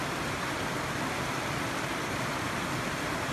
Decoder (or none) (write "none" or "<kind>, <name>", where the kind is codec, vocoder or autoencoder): none